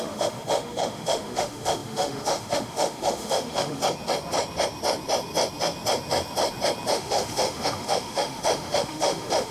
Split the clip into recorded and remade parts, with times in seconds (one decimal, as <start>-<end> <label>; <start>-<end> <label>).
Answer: 0.0-3.8 remade; 3.8-6.9 recorded; 6.9-9.5 remade